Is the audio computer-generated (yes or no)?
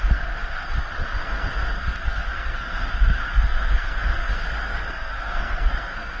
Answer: yes